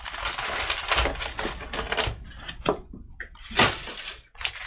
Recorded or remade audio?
recorded